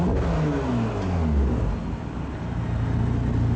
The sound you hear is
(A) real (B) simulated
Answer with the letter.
A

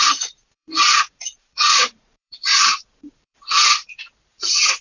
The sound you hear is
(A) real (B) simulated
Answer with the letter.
B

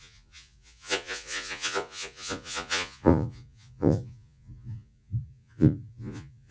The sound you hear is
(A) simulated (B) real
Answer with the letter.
A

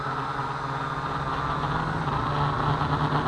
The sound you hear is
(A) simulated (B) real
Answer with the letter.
B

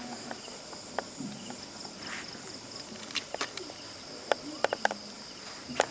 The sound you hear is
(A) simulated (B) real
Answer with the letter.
B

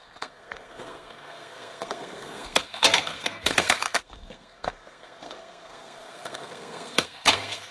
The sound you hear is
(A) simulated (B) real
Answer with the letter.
A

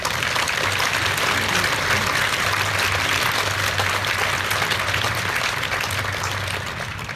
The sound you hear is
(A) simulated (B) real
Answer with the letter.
B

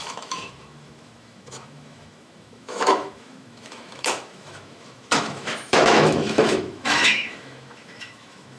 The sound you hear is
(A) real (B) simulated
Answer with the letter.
B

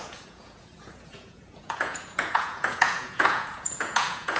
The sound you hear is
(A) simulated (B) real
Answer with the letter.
A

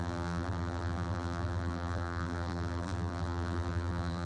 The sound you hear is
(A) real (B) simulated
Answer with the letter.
B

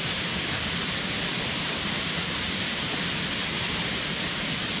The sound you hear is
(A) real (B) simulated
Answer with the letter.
A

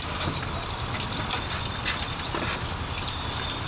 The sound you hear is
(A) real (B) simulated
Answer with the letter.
A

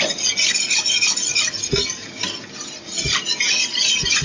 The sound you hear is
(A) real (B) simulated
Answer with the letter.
A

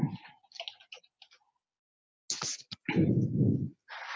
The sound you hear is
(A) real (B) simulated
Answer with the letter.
A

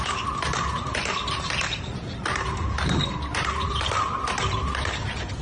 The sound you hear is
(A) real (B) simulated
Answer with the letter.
A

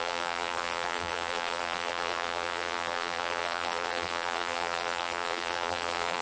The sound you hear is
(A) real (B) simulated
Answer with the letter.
B